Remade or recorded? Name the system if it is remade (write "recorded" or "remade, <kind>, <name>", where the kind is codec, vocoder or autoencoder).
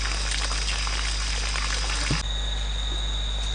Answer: recorded